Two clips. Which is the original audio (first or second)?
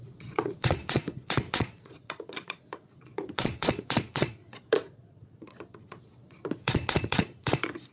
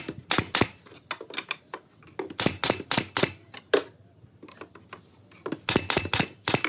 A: second